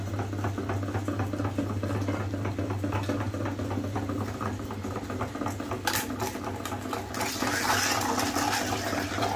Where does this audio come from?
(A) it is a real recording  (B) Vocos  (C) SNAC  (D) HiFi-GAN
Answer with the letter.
A